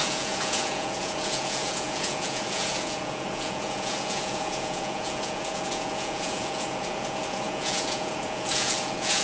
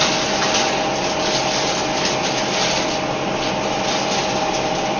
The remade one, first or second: first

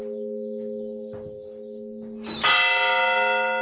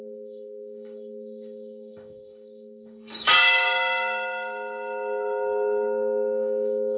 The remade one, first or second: second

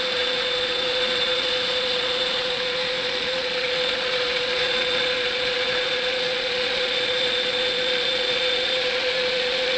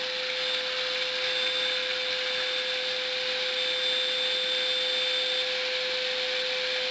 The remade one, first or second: first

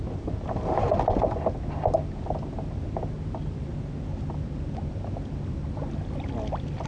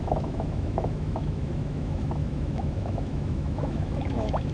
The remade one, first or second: second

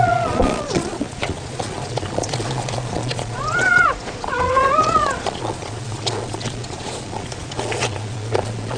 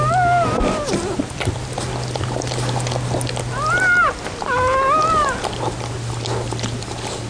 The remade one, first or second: first